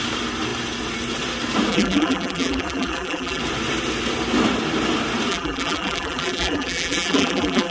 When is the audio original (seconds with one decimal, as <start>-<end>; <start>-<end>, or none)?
0.0-1.7; 3.4-5.3

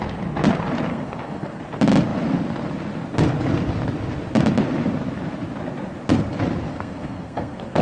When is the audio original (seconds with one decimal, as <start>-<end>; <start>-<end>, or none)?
0.0-0.9; 1.6-6.7

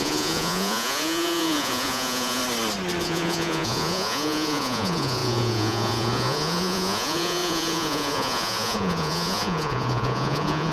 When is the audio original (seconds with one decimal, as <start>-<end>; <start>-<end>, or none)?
2.4-3.0

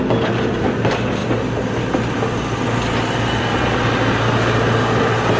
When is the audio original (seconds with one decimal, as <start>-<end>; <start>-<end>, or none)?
0.0-5.4

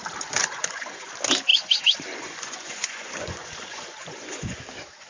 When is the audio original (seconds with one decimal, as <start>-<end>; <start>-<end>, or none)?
0.0-0.4; 1.1-1.5; 4.6-5.1

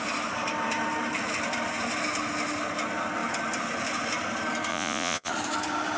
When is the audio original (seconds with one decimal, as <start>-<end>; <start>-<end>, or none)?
0.0-4.7; 5.3-6.0

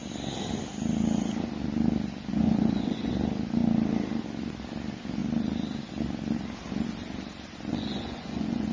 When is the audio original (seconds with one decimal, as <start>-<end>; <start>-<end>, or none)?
0.0-2.3; 3.1-7.7

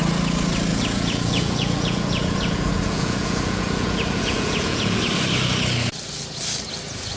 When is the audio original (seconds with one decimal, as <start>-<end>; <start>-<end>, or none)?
0.0-0.7; 5.0-7.2